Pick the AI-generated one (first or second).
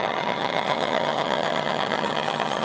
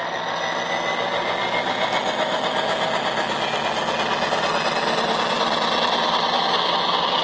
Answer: first